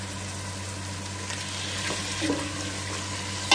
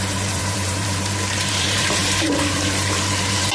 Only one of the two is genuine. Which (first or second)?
first